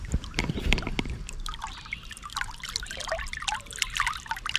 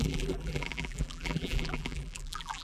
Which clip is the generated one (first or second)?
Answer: second